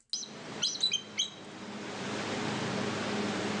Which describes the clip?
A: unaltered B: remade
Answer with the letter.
A